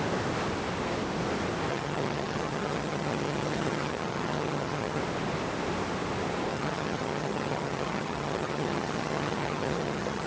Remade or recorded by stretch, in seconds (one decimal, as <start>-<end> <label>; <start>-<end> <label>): 0.0-1.7 recorded; 1.7-5.0 remade; 5.0-6.5 recorded; 6.5-10.3 remade